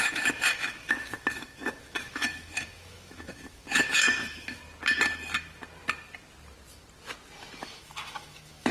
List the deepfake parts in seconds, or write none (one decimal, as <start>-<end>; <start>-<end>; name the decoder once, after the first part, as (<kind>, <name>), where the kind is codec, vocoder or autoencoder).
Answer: 0.0-4.6 (autoencoder, DAC-VAE); 7.6-8.7